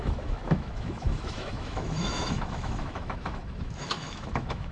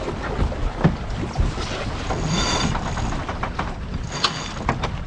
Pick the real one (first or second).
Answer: second